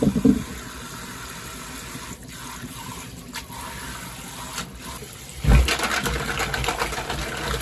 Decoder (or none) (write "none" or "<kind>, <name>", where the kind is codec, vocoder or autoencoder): none